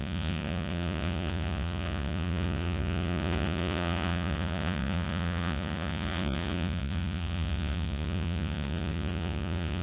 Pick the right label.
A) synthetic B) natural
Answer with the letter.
A